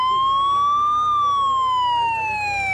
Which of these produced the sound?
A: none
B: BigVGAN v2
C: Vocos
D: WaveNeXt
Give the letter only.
A